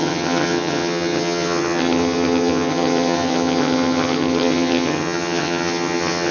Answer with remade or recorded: remade